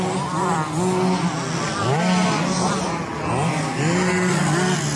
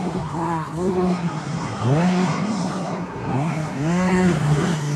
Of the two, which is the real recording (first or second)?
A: first